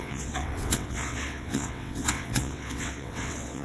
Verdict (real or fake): fake